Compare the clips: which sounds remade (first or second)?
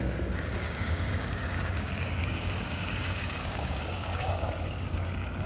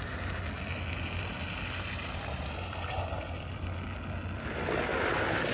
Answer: first